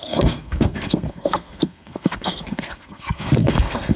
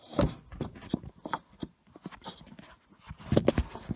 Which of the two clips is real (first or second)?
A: second